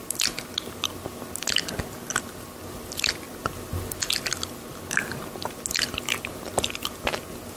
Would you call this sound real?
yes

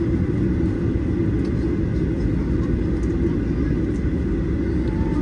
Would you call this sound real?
yes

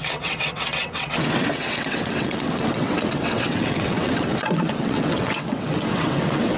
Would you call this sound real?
no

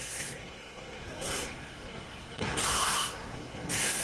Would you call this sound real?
no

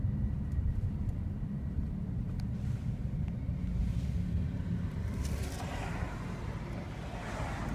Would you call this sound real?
yes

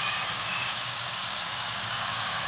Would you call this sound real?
no